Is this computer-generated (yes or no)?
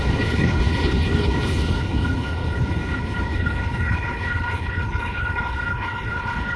yes